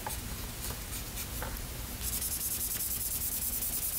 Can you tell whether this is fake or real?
real